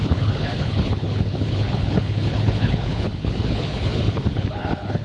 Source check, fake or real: fake